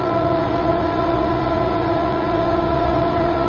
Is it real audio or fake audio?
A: fake